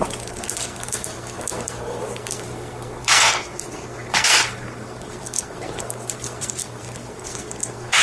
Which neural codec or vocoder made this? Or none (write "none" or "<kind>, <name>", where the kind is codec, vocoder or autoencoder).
codec, SNAC